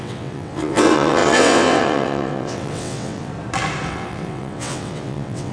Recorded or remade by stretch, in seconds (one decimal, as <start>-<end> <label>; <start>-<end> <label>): 0.0-3.3 remade; 3.3-3.9 recorded; 3.9-5.5 remade

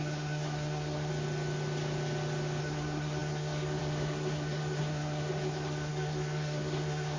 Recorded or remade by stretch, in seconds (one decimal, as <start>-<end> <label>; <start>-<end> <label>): 0.0-1.1 remade; 1.1-2.6 recorded; 2.6-7.2 remade

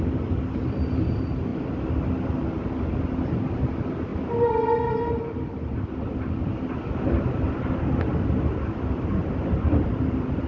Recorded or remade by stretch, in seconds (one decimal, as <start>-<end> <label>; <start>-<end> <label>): 0.0-9.2 recorded; 9.2-10.5 remade

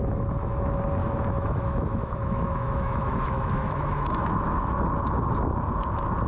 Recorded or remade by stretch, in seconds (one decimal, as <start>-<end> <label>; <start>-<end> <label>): 0.0-1.0 recorded; 1.0-4.8 remade; 4.8-6.3 recorded

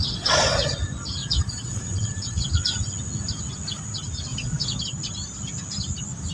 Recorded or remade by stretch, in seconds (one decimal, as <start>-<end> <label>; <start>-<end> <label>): 0.0-0.7 remade; 0.7-1.2 recorded; 1.2-2.5 remade; 2.5-4.3 recorded; 4.3-4.8 remade; 4.8-6.3 recorded

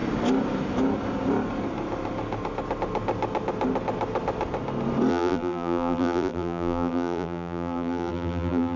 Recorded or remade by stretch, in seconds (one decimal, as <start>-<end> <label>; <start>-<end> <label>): 0.0-5.1 recorded; 5.1-8.8 remade

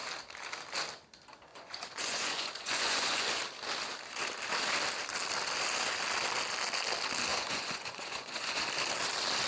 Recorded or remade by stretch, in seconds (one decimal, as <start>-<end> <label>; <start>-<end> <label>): 0.0-1.5 recorded; 1.5-3.4 remade; 3.4-7.3 recorded; 7.3-8.6 remade; 8.6-9.5 recorded